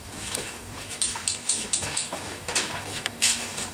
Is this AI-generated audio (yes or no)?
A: yes